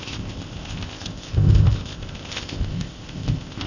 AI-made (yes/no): yes